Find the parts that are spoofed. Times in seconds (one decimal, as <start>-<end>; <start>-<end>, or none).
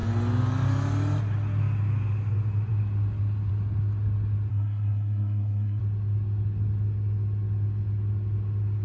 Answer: 4.5-5.8